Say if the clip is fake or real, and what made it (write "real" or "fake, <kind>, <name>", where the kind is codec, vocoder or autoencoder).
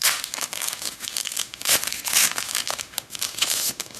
fake, autoencoder, DAC-VAE